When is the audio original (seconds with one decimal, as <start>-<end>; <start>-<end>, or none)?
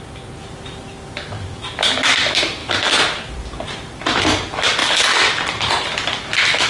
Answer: 0.0-6.7